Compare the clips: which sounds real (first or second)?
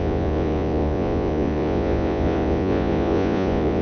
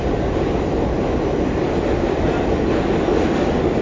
second